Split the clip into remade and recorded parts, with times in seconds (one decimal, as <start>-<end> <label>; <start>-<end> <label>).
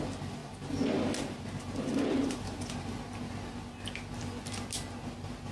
0.0-5.5 recorded